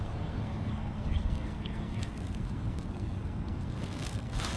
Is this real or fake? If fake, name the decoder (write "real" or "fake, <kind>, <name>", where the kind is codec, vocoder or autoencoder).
fake, codec, SNAC